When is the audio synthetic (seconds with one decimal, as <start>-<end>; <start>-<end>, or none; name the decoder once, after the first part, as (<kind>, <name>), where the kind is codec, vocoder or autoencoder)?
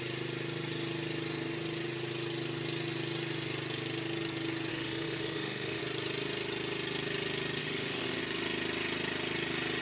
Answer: 4.7-5.8 (autoencoder, DAC-VAE); 7.6-8.2